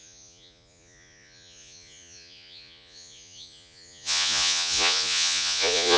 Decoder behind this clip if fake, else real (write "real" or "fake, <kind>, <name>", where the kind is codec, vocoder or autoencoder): fake, vocoder, Vocos